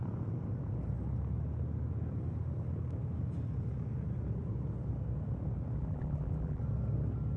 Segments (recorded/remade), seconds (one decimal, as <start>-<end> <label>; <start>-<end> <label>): 0.0-5.8 recorded; 5.8-6.6 remade; 6.6-7.4 recorded